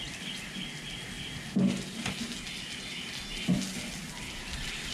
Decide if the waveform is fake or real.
real